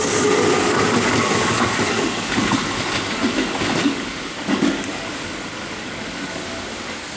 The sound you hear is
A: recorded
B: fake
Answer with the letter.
B